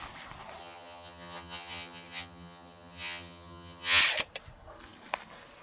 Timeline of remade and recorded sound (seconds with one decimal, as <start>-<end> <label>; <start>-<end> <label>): 0.0-0.6 recorded; 0.6-4.0 remade; 4.0-5.6 recorded